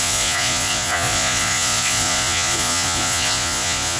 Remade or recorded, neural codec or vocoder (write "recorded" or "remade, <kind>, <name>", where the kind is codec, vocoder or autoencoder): remade, vocoder, Vocos